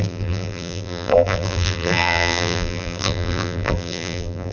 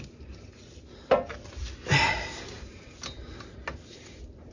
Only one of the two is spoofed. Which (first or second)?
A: first